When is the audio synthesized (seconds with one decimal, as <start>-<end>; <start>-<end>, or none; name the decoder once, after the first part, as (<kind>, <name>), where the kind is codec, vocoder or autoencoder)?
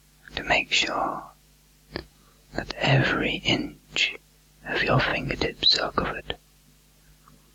2.0-2.7 (vocoder, Vocos); 5.1-6.2